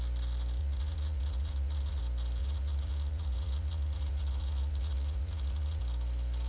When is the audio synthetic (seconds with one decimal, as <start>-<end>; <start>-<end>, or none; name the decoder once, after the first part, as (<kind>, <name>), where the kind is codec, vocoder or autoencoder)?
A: 0.6-2.0 (vocoder, Vocos); 2.4-5.8